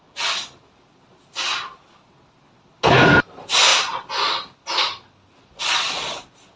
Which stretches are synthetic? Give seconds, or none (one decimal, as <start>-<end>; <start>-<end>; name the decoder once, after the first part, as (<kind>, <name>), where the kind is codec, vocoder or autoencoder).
none